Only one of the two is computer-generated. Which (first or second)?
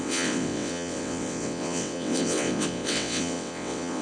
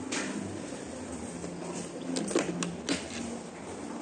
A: first